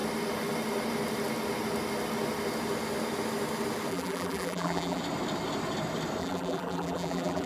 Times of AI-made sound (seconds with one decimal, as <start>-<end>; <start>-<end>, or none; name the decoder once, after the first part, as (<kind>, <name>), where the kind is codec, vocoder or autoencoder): 3.9-5.0 (vocoder, BigVGAN v2); 6.2-7.5